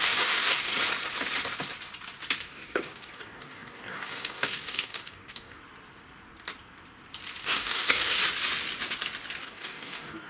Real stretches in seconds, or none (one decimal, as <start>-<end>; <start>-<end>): 0.7-2.4; 5.6-7.4; 8.2-9.4